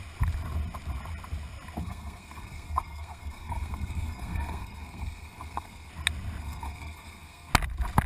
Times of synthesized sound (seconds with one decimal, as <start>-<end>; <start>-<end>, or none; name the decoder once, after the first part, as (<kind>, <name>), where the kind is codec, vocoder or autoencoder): 1.8-5.9 (codec, SNAC); 6.4-7.5